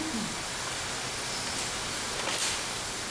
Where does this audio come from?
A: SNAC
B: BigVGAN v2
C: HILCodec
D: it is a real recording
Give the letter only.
D